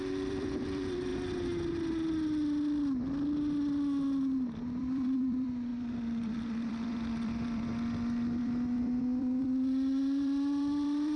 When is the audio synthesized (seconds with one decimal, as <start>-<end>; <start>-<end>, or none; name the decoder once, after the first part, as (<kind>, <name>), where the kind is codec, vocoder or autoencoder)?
0.0-1.1 (vocoder, BigVGAN v2); 4.8-7.7; 8.4-11.2